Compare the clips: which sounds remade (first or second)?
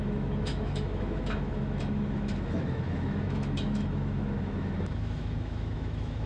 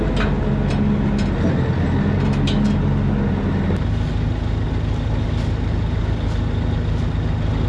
first